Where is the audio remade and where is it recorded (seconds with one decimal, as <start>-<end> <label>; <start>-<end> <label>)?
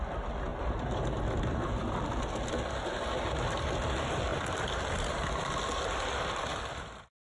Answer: 0.0-0.5 recorded; 0.5-2.7 remade; 2.7-7.4 recorded